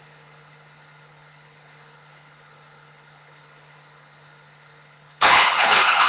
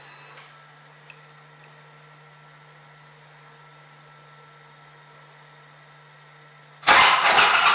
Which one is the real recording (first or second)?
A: second